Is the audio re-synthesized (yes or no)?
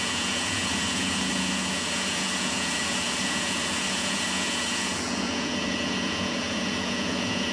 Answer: yes